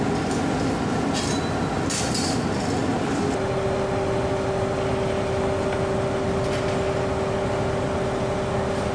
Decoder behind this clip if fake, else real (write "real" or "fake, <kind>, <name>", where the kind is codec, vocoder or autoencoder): real